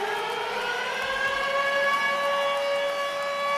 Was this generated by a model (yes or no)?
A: no